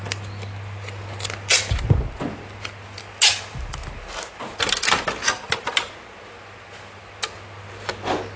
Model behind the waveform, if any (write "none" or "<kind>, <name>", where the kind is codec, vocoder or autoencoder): none